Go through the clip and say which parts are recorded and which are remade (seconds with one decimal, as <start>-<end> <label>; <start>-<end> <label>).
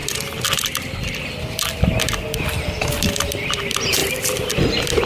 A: 0.0-5.1 recorded